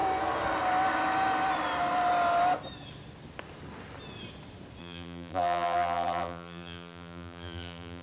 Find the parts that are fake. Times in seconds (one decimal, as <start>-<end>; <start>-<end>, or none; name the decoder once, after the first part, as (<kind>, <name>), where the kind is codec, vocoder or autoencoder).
4.8-8.0 (vocoder, BigVGAN v2)